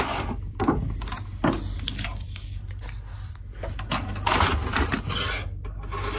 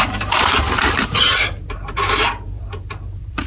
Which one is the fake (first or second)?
second